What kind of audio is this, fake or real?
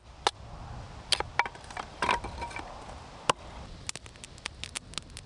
real